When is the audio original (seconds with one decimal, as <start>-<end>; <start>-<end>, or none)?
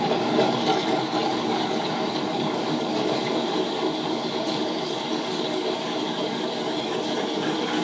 none